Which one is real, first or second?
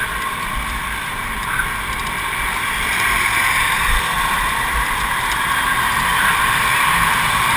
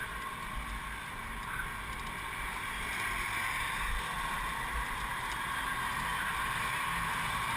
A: second